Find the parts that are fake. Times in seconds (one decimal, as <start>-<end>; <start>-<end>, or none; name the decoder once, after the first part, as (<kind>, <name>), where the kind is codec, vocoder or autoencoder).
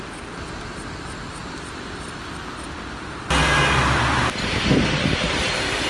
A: none